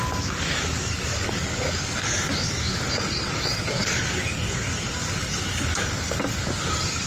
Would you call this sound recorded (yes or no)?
no